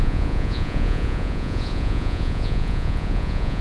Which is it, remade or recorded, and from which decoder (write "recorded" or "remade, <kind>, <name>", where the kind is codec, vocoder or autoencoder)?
remade, vocoder, Vocos